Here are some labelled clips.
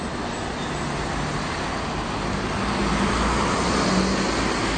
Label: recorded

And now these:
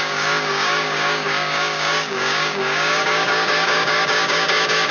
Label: remade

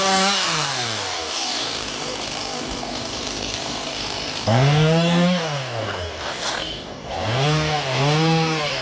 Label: remade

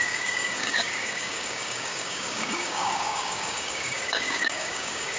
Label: remade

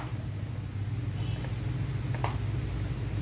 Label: recorded